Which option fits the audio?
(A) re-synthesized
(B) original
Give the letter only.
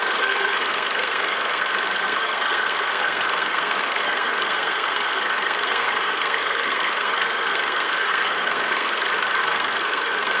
A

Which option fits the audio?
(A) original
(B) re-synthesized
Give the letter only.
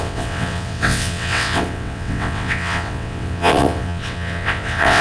B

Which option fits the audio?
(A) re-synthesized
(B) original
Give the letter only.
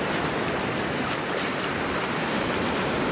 A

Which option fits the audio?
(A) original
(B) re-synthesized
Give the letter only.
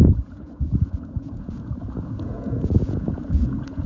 B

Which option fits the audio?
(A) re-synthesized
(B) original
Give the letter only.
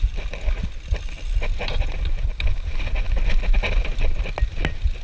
B